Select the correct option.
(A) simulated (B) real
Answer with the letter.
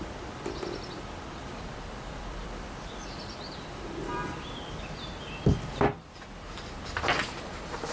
A